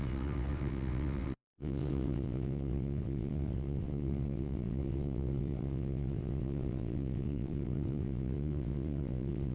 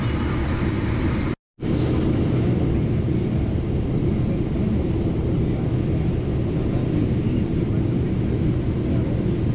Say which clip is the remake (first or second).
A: first